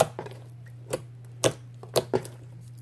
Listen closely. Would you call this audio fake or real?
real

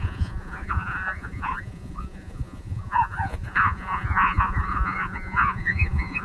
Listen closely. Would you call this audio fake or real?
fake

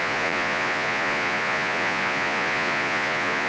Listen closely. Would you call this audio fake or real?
fake